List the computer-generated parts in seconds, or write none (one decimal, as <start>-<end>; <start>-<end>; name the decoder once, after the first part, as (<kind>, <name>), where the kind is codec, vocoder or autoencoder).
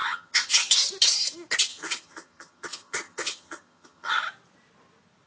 0.0-0.7 (vocoder, HiFi-GAN); 1.7-4.2